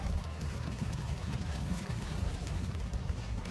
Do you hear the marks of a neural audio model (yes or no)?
yes